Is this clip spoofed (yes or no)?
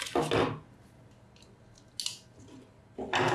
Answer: no